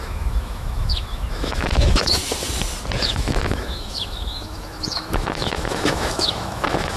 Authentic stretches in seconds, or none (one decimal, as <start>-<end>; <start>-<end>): 2.2-3.0